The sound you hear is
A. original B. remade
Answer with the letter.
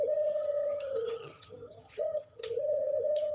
B